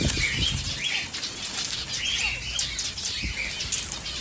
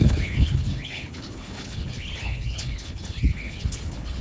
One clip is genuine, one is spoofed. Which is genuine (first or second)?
first